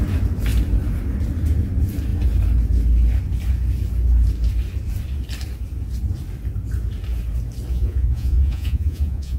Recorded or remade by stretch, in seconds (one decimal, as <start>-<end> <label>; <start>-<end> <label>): 0.0-7.7 recorded; 7.7-9.4 remade